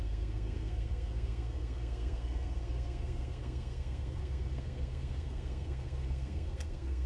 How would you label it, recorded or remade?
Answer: remade